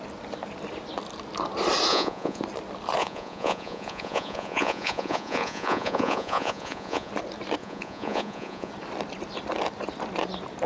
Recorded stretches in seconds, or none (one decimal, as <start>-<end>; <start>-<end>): 0.0-1.9; 2.4-3.0; 7.1-7.6; 8.7-10.7